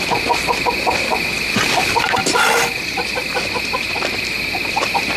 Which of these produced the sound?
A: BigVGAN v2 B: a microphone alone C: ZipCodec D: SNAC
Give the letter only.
B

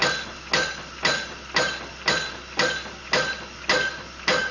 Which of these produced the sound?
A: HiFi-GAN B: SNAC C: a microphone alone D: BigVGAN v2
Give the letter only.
C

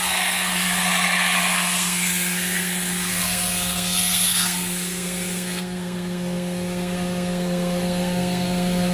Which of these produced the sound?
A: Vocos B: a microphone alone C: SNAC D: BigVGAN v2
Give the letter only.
C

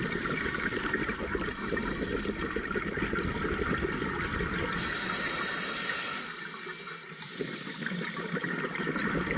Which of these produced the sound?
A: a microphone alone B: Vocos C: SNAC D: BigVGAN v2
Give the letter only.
A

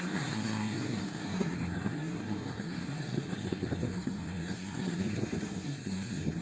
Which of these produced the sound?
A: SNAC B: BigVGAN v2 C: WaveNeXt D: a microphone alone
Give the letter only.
A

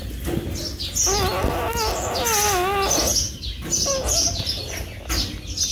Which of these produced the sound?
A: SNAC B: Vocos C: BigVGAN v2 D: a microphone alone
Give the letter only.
D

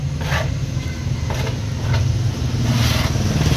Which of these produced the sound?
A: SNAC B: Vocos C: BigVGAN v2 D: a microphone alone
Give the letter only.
D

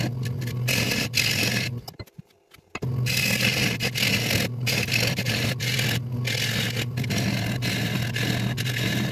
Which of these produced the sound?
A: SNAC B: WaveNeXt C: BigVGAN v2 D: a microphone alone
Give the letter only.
D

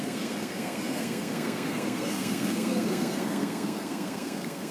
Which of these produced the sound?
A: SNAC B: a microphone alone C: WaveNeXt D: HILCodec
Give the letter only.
A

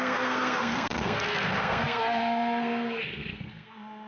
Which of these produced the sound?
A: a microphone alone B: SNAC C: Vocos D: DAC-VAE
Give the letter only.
B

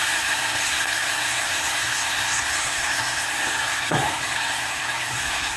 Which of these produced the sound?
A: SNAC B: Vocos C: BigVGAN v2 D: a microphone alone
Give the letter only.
A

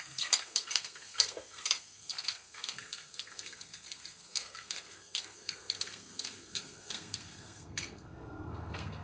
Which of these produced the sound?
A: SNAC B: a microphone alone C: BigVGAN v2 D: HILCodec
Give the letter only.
A